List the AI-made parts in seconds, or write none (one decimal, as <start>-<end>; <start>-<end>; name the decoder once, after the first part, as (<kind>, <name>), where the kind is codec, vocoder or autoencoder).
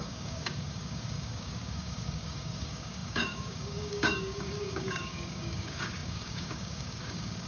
0.0-7.5 (codec, DAC)